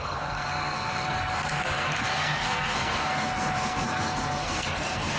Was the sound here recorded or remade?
remade